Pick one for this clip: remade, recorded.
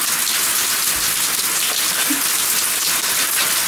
recorded